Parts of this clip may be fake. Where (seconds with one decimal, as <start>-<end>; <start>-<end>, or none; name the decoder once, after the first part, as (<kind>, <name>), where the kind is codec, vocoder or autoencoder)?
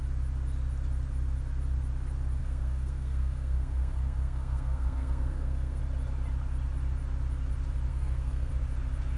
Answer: 2.4-5.8 (codec, SNAC); 7.9-8.5